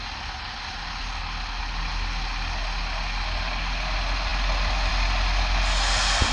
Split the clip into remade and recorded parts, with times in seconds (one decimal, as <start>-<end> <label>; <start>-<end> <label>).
0.0-6.3 recorded